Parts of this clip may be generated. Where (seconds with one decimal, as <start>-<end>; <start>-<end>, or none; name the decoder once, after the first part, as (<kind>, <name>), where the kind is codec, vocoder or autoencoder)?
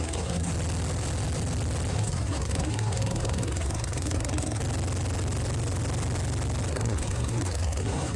0.0-0.5 (codec, SNAC); 1.9-4.6; 6.7-8.2